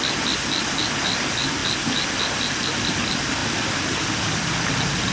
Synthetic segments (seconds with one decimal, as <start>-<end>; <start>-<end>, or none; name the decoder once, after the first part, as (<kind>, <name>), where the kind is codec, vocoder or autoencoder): none